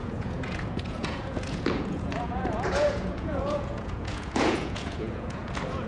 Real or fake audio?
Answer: fake